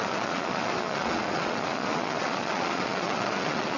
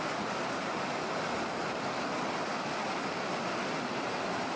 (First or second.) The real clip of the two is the second